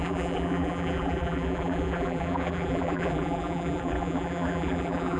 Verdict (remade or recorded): remade